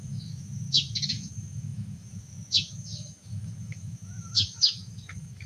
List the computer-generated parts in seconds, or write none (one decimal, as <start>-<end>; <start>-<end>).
0.0-5.5